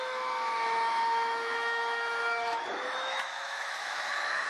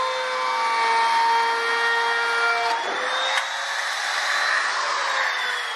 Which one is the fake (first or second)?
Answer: first